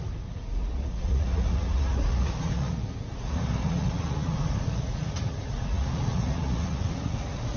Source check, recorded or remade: remade